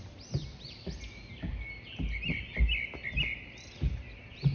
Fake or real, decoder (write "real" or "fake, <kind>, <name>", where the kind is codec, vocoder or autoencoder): real